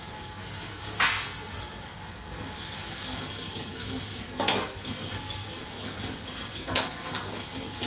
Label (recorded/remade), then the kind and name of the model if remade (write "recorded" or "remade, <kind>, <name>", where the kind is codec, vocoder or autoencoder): remade, codec, SNAC